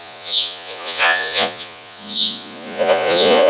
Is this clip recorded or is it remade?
remade